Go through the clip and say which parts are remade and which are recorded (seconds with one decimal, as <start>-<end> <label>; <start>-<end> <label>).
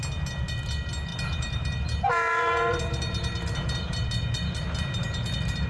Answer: 0.0-1.1 recorded; 1.1-4.1 remade; 4.1-5.7 recorded